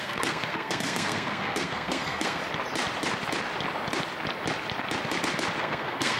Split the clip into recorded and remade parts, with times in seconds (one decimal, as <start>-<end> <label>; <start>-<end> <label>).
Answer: 0.0-2.4 remade; 2.4-5.6 recorded; 5.6-6.2 remade